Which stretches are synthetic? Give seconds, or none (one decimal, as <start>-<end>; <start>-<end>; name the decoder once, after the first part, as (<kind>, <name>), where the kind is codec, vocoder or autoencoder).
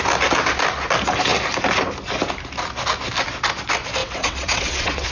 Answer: 4.0-5.1 (vocoder, WaveNeXt)